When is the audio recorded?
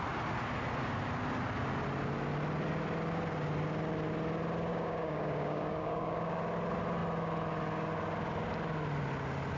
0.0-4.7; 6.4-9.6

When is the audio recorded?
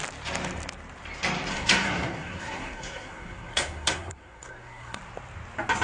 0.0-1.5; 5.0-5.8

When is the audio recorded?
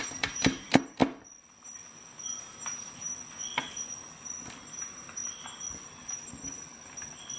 1.0-2.4; 3.1-4.8; 5.2-7.4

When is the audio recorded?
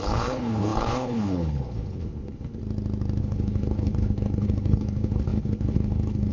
2.6-3.2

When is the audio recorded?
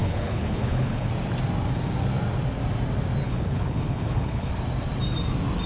1.1-3.2; 4.5-5.7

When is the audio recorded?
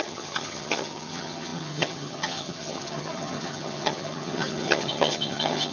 none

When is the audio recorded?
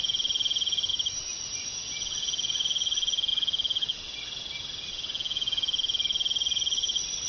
0.0-0.9; 1.7-7.3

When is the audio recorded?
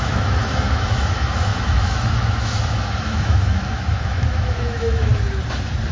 5.1-5.9